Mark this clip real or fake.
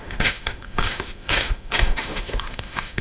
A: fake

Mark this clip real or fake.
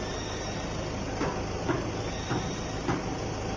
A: real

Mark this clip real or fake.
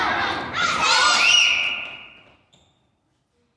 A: real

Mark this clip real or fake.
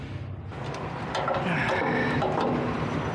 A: real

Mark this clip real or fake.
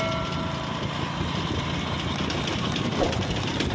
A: real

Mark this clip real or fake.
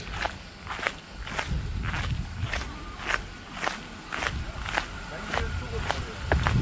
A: real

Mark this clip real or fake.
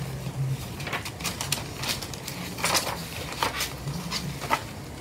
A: real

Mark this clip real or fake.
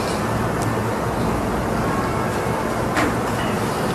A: real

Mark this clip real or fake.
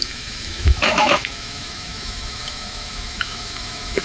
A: fake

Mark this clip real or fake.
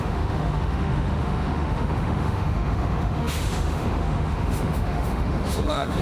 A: fake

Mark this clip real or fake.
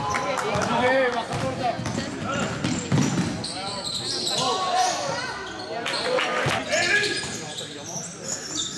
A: real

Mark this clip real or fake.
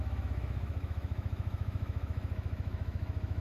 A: fake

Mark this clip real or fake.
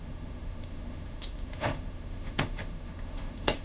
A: fake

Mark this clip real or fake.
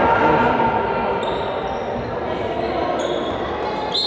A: real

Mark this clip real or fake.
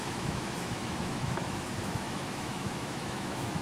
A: fake